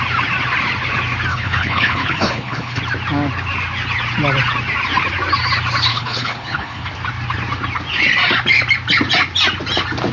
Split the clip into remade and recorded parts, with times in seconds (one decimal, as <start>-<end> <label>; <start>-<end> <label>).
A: 0.0-1.3 recorded; 1.3-2.8 remade; 2.8-5.9 recorded; 5.9-6.9 remade; 6.9-10.1 recorded